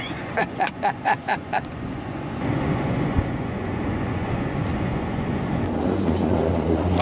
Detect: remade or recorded remade